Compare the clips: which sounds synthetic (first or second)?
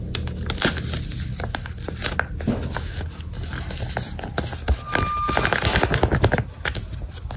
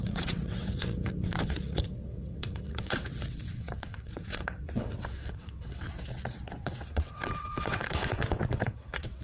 second